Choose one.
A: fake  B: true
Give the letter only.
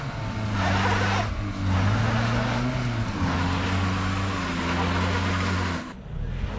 B